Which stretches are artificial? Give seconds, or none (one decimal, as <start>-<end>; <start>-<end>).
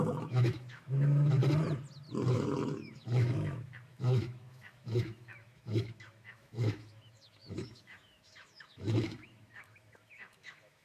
0.0-1.4; 2.3-10.8